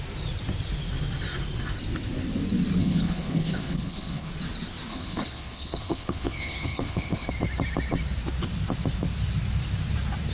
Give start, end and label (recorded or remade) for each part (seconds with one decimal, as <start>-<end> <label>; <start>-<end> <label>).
0.0-2.8 recorded; 2.8-4.3 remade; 4.3-4.9 recorded; 4.9-7.3 remade; 7.3-10.3 recorded